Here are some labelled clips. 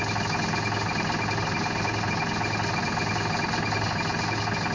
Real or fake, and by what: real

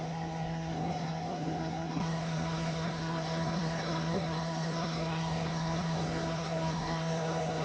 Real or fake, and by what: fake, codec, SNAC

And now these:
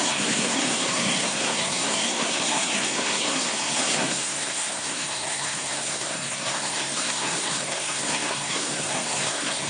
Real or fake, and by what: fake, codec, SNAC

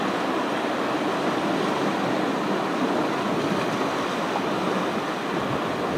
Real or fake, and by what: real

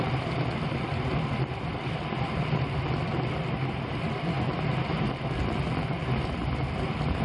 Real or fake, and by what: real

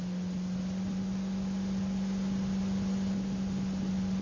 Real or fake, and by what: real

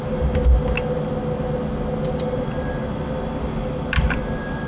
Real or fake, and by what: real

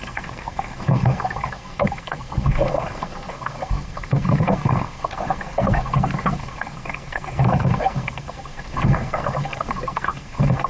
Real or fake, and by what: fake, codec, SNAC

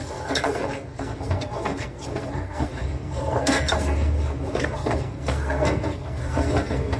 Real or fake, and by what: fake, codec, SNAC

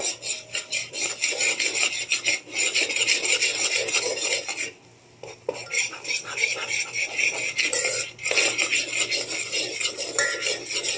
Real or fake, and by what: real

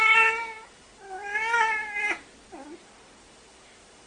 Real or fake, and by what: real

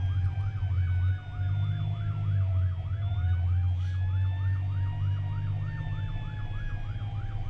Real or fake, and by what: real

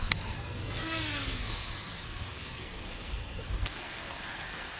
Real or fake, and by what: fake, codec, SNAC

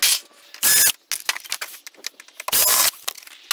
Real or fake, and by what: real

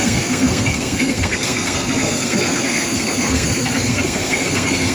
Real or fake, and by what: fake, codec, SNAC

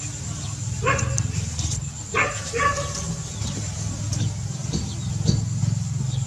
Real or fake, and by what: real